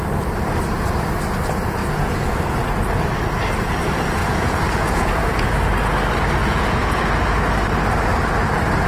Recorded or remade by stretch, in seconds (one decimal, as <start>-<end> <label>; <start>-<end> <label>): 0.0-1.8 recorded; 1.8-2.4 remade; 2.4-4.2 recorded; 4.2-5.5 remade; 5.5-6.4 recorded; 6.4-7.0 remade; 7.0-8.9 recorded